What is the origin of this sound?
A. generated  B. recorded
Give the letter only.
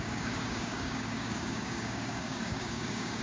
A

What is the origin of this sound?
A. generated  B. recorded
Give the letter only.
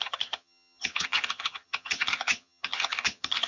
A